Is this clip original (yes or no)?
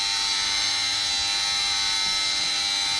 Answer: no